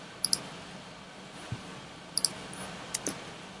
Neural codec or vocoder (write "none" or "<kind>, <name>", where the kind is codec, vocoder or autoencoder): none